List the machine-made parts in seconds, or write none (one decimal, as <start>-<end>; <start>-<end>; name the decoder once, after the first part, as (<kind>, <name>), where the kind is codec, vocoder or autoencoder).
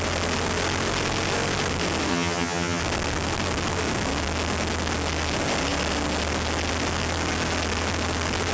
2.1-2.8 (vocoder, HiFi-GAN)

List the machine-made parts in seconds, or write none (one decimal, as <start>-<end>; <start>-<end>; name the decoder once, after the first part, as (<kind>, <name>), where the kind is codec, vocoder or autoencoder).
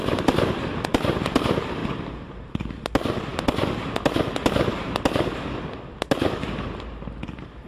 1.8-2.5 (vocoder, BigVGAN v2)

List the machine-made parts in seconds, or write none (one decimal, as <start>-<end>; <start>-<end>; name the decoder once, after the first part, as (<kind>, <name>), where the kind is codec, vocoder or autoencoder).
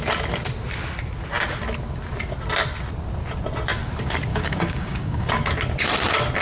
4.3-5.3 (codec, DAC)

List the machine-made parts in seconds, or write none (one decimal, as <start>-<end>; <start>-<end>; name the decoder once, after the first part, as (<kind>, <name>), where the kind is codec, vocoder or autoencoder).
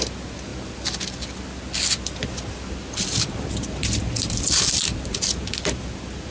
none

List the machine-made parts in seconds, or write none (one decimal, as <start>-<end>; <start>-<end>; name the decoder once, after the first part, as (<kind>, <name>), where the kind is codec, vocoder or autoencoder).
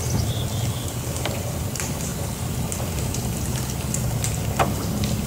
none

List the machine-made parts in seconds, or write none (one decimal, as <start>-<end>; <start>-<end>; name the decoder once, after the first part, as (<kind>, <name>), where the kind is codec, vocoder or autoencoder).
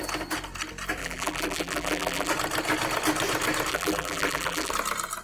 1.0-2.3 (vocoder, BigVGAN v2); 3.7-4.7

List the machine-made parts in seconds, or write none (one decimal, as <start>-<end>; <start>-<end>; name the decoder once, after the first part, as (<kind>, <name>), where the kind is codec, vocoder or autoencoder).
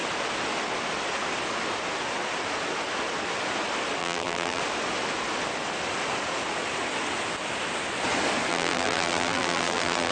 4.0-4.6 (vocoder, BigVGAN v2); 8.5-10.1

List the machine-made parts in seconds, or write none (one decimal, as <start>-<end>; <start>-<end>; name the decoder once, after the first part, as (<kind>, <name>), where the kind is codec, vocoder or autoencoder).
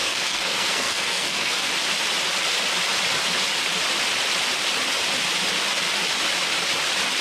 0.0-1.7 (codec, SNAC)